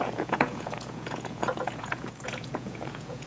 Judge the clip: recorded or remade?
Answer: remade